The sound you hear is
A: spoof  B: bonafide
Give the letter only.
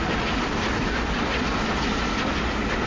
B